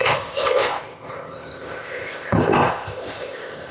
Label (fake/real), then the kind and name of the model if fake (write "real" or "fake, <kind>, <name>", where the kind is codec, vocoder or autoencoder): fake, codec, ZipCodec